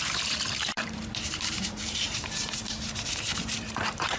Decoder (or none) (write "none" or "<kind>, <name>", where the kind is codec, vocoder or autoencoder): vocoder, BigVGAN v2